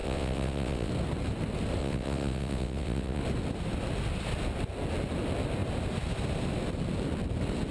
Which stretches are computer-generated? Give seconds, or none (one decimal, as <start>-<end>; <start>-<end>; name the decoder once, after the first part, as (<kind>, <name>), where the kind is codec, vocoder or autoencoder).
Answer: 0.0-0.9 (vocoder, WaveNeXt); 1.8-3.2